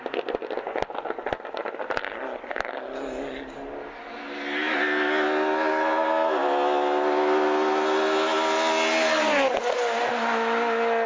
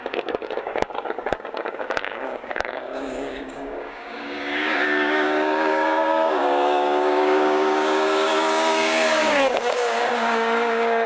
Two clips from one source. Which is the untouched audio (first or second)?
first